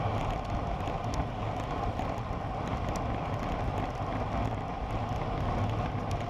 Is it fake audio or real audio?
real